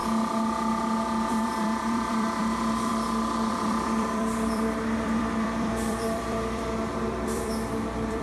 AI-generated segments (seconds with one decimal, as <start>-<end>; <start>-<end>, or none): 1.3-2.9; 3.5-8.2